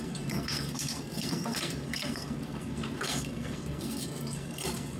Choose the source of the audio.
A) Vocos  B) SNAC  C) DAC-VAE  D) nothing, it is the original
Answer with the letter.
B